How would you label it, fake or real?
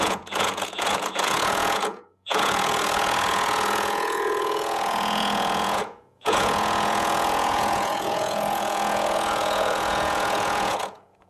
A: fake